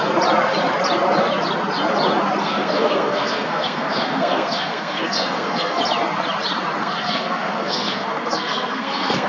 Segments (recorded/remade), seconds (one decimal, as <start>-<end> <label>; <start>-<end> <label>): 0.0-2.4 recorded; 2.4-5.8 remade; 5.8-6.8 recorded; 6.8-9.3 remade